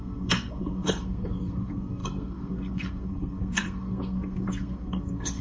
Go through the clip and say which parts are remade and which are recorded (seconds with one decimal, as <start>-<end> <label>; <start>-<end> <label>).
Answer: 0.0-5.4 remade